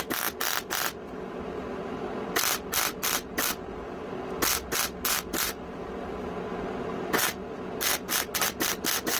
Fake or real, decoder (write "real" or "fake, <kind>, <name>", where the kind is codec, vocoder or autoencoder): real